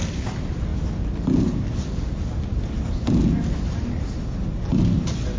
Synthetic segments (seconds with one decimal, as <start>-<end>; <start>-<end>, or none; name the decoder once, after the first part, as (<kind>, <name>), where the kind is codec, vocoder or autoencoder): none